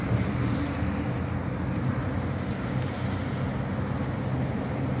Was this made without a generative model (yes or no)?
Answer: yes